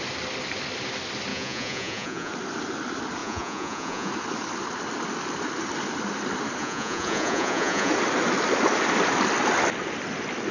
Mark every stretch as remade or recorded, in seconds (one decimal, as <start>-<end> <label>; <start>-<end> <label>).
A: 0.0-1.3 recorded; 1.3-2.3 remade; 2.3-3.2 recorded; 3.2-4.1 remade; 4.1-6.6 recorded; 6.6-7.9 remade; 7.9-10.5 recorded